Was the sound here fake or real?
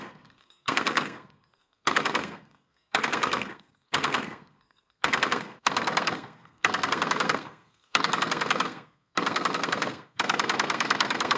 fake